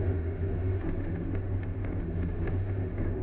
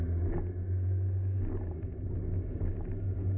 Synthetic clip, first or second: first